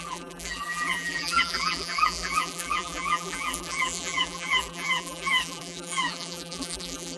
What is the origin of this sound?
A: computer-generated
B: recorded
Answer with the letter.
A